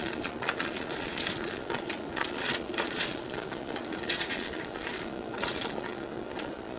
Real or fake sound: fake